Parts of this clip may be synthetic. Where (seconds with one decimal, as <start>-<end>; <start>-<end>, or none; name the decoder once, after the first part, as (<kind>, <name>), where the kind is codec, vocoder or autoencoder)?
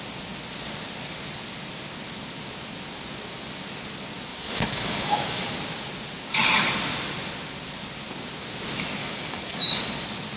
4.3-5.5 (codec, DAC); 9.0-9.8